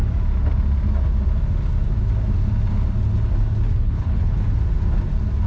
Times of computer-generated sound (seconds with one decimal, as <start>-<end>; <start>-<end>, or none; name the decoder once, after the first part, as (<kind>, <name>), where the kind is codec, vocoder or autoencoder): 3.7-4.4 (codec, HILCodec)